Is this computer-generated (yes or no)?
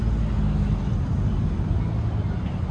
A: no